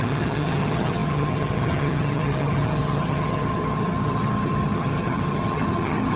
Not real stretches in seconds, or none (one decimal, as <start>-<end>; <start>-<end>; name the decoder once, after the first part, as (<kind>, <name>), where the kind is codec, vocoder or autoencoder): 0.0-6.2 (vocoder, HiFi-GAN)